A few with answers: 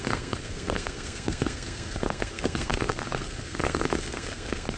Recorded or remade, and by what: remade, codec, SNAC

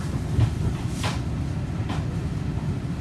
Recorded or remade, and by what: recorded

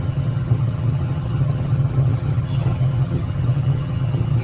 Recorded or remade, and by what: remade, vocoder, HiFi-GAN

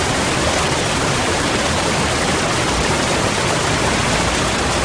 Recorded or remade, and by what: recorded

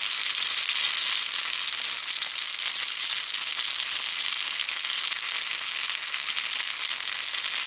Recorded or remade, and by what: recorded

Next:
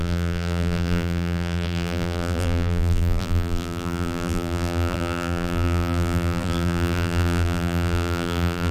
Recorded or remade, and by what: remade, vocoder, BigVGAN v2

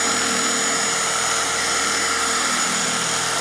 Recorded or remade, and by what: recorded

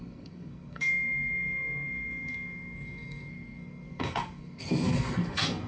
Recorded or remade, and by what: remade, codec, SNAC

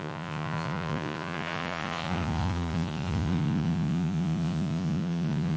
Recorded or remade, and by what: remade, vocoder, Vocos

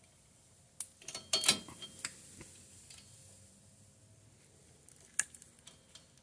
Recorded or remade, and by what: recorded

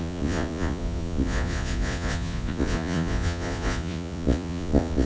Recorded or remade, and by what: remade, vocoder, Vocos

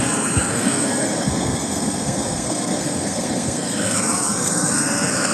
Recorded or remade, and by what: remade, codec, SNAC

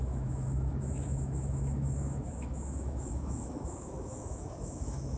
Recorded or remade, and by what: remade, autoencoder, DAC-VAE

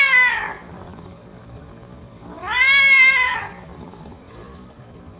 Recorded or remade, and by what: remade, codec, DAC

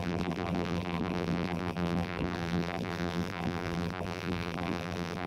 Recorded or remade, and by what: remade, vocoder, BigVGAN v2